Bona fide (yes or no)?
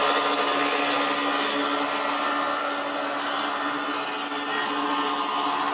yes